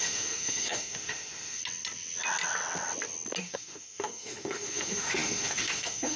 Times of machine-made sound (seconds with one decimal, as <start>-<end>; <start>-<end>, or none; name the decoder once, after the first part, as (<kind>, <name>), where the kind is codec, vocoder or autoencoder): 0.0-1.6 (autoencoder, DAC-VAE); 3.4-6.2